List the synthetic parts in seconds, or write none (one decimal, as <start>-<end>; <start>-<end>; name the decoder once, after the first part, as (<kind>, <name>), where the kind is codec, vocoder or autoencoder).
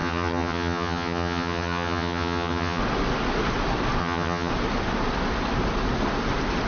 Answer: 0.0-2.8 (vocoder, HiFi-GAN); 4.0-4.5